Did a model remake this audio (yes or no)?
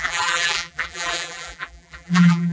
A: yes